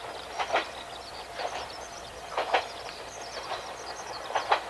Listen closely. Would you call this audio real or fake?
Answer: real